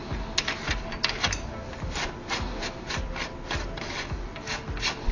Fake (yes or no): no